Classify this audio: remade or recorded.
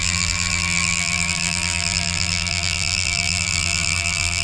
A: remade